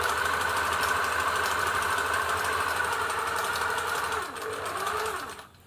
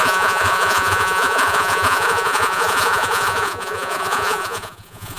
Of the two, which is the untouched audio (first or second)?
first